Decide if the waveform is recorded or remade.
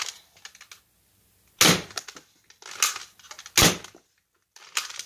recorded